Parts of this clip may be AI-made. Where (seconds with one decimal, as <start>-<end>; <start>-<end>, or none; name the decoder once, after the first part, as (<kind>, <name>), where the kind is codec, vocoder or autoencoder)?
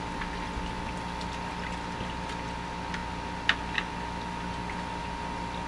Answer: none